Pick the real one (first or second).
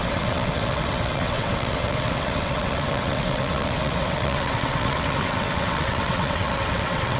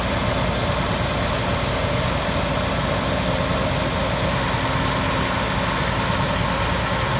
second